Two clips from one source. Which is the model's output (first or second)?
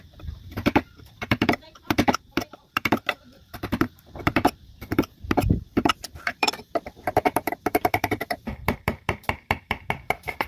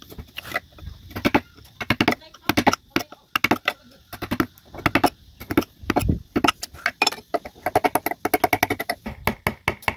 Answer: first